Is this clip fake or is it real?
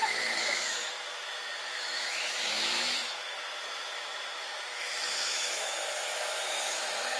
fake